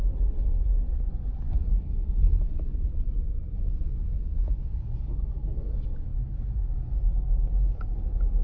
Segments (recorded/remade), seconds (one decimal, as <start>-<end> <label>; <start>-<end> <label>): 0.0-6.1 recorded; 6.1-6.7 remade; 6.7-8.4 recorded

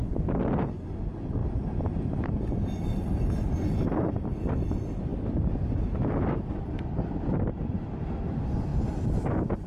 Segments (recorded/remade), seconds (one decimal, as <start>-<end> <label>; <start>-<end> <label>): 0.0-9.7 recorded

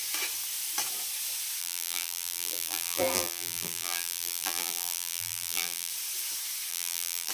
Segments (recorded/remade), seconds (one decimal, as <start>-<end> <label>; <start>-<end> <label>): 0.0-1.6 recorded; 1.6-5.9 remade; 5.9-6.7 recorded; 6.7-7.3 remade

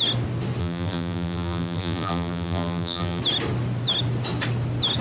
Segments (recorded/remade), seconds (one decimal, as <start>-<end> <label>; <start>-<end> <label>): 0.0-0.6 recorded; 0.6-3.2 remade; 3.2-5.0 recorded

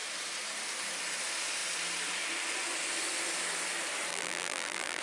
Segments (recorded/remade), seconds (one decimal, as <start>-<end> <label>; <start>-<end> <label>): 0.0-4.1 recorded; 4.1-5.0 remade

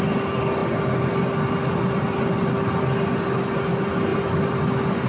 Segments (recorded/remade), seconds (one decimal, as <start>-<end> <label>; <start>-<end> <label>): 0.0-4.1 recorded; 4.1-4.6 remade; 4.6-5.1 recorded